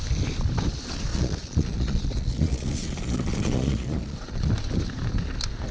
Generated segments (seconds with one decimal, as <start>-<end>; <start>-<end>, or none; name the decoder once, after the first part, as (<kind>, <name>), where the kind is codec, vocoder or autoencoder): 1.1-4.5 (vocoder, Vocos)